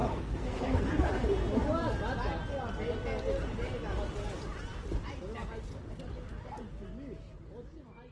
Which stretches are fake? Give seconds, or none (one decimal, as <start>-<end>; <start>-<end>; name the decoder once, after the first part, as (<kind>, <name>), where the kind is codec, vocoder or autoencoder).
0.0-0.9 (codec, SNAC)